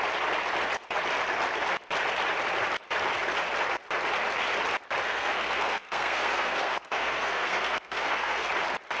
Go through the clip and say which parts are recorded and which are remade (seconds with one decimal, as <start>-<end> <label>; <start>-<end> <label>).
0.0-5.0 recorded; 5.0-8.5 remade; 8.5-9.0 recorded